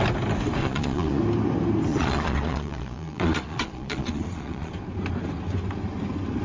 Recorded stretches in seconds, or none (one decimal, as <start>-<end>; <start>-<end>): 0.0-0.6; 1.2-1.9; 4.7-6.4